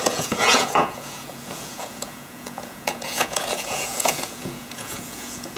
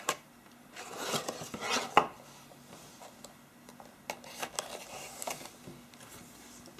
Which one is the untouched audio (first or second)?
second